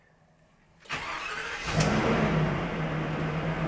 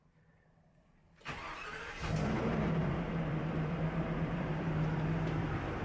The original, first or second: first